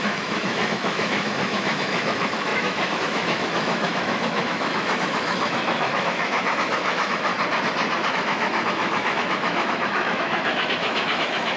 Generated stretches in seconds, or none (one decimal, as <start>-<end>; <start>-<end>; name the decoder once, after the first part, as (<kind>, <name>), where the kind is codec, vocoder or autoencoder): 0.0-7.3 (autoencoder, DAC-VAE); 8.1-11.6